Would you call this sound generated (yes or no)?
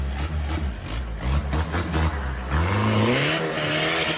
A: no